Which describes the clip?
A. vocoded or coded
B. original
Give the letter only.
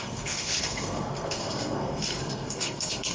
A